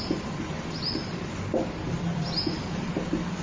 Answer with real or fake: real